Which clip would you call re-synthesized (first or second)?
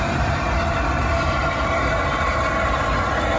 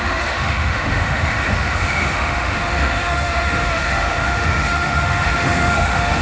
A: second